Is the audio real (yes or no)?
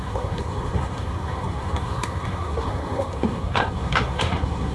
no